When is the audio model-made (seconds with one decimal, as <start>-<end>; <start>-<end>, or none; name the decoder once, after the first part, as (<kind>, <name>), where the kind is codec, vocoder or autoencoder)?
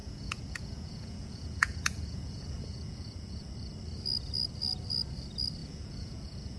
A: 0.0-3.5 (vocoder, Vocos); 5.6-6.6